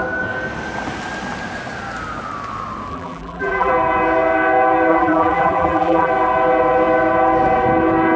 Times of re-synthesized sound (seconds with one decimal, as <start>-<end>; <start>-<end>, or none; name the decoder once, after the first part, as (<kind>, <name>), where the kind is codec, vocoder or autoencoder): 2.9-3.7 (vocoder, BigVGAN v2); 4.9-6.1